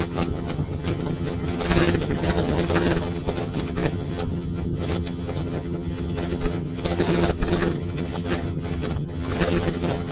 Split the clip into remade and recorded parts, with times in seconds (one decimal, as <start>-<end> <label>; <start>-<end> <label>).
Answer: 0.0-10.1 remade